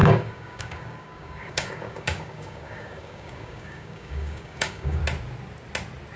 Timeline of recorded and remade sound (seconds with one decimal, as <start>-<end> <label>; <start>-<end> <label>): 0.0-5.0 remade; 5.0-6.2 recorded